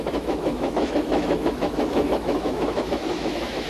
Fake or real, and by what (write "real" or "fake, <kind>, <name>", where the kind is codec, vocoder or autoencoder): fake, autoencoder, DAC-VAE